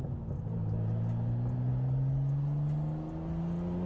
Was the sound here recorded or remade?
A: recorded